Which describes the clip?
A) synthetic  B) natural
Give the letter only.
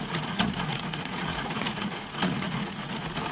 A